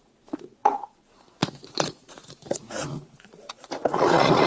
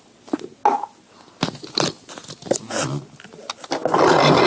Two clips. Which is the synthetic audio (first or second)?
first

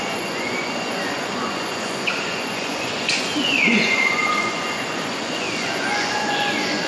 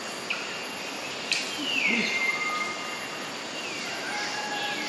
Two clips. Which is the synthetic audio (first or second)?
first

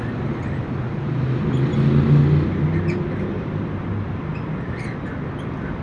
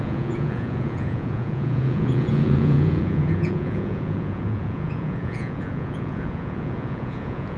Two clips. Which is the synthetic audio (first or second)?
second